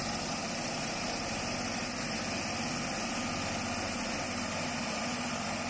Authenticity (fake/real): real